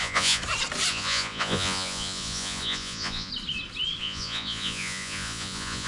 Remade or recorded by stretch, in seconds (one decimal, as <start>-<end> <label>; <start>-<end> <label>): 0.0-0.4 remade; 0.4-0.9 recorded; 0.9-3.3 remade; 3.3-4.0 recorded; 4.0-5.9 remade